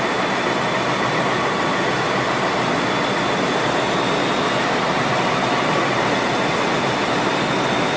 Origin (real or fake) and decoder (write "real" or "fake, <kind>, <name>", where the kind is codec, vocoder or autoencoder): real